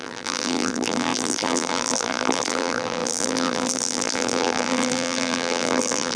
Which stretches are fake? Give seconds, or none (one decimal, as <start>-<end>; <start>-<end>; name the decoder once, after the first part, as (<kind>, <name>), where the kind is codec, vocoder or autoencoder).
0.0-6.2 (vocoder, BigVGAN v2)